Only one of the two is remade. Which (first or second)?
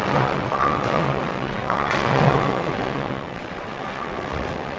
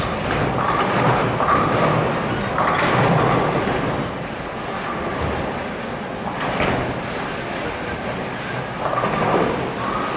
first